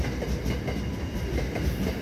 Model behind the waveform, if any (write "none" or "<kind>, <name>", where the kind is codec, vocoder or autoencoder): none